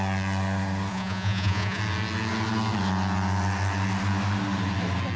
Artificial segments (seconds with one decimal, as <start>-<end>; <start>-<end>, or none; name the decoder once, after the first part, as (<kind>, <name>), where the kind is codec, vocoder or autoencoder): 0.9-1.8 (vocoder, Vocos)